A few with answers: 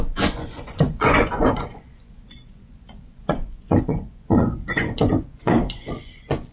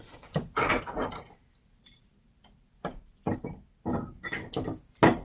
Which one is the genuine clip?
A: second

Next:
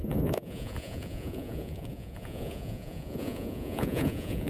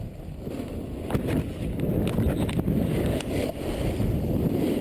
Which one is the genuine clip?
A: second